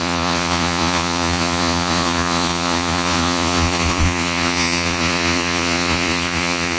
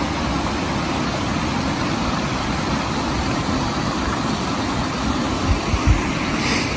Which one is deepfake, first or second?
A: first